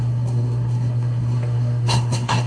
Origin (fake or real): fake